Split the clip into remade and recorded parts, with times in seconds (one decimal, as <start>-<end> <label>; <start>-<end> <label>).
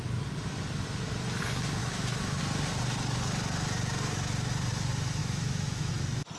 0.0-1.8 recorded; 1.8-2.4 remade; 2.4-5.2 recorded; 5.2-5.9 remade; 5.9-6.4 recorded